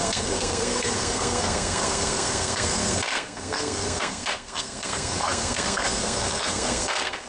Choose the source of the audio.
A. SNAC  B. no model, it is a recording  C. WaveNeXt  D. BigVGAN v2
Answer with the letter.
A